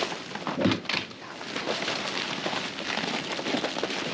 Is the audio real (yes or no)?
yes